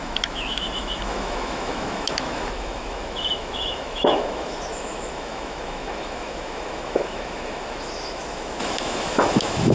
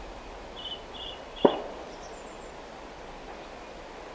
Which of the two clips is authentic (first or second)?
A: second